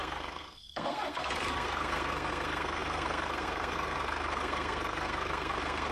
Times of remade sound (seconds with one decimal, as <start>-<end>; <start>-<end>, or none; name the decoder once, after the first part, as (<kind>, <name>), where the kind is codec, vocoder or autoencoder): 0.0-5.9 (codec, SNAC)